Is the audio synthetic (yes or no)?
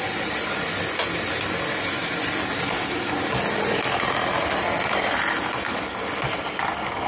no